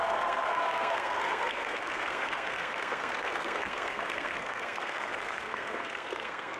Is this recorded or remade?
remade